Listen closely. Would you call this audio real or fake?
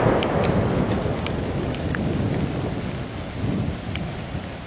real